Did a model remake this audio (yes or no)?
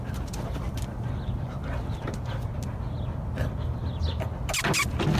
no